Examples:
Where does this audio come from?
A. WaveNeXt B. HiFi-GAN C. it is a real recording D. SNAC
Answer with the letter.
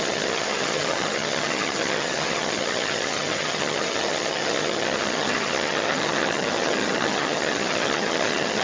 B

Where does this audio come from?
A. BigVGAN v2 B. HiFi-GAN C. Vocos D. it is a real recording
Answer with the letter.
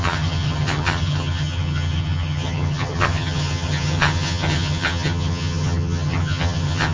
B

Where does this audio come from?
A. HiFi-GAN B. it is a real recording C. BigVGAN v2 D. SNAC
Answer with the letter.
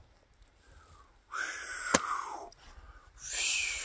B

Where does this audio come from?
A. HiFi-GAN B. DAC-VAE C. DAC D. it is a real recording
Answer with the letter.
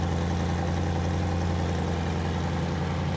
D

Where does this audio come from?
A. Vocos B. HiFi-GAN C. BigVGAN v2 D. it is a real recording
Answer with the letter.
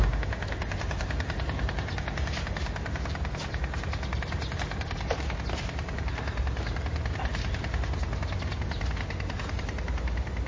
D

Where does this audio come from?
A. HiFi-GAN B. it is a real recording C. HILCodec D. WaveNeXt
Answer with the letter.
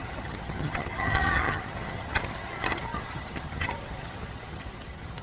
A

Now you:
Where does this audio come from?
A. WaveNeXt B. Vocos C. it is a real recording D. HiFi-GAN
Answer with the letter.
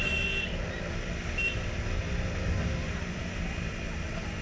C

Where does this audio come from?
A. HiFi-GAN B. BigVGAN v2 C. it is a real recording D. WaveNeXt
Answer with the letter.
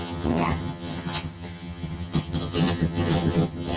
A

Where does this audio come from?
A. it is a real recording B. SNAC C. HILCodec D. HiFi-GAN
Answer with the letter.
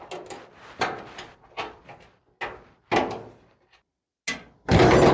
A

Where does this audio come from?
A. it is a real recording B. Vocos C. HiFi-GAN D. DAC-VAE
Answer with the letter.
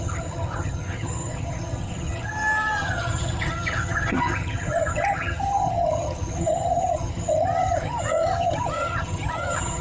C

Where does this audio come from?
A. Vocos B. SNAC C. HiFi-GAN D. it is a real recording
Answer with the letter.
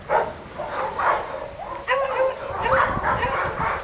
D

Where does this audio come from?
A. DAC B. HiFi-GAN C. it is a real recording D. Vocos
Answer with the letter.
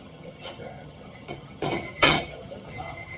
B